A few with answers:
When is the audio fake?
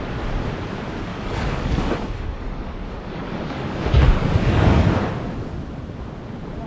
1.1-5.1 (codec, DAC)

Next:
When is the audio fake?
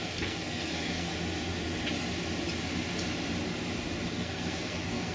0.0-1.1 (codec, SNAC); 4.1-5.1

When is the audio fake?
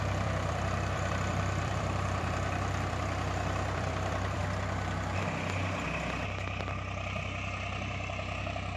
0.0-4.4 (vocoder, BigVGAN v2); 8.4-8.8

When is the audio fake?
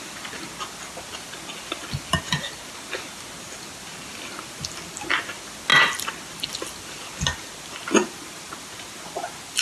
none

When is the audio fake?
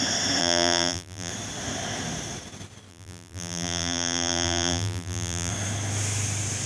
0.4-1.3 (vocoder, BigVGAN v2); 2.9-5.5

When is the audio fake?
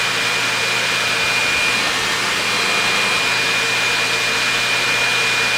none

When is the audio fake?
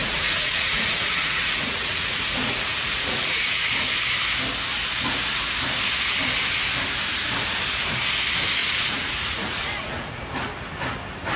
0.0-3.7 (vocoder, Vocos); 8.6-10.2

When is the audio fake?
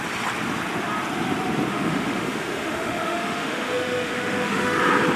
1.7-4.8 (autoencoder, DAC-VAE)